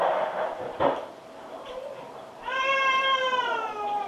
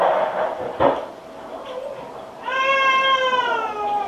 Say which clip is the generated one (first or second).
first